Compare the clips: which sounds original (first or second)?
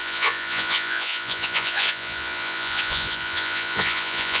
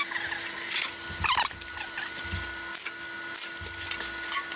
second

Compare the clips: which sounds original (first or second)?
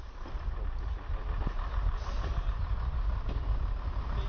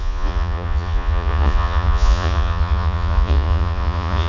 first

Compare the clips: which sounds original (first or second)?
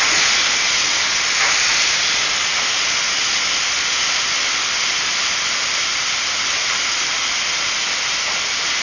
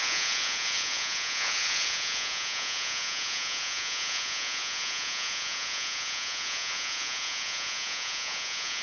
first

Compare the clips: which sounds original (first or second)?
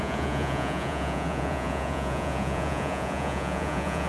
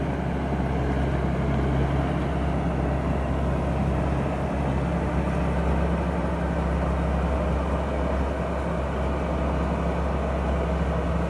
second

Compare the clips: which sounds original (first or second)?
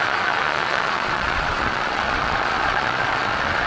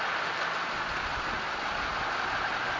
second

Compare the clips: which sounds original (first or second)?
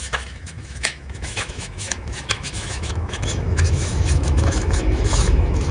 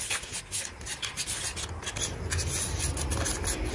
second